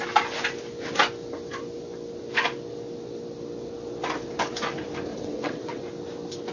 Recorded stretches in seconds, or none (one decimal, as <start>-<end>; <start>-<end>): 0.0-5.1; 5.8-6.5